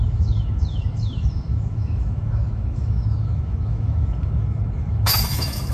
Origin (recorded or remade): remade